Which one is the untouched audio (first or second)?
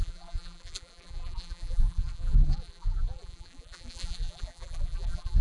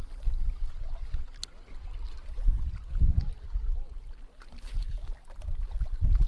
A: second